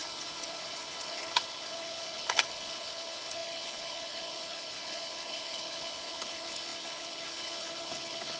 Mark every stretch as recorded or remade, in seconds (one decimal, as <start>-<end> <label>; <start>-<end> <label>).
0.0-8.4 remade